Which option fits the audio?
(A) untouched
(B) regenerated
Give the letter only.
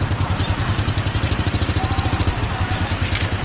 A